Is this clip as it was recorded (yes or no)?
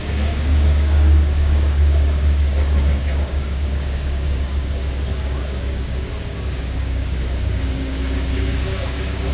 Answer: no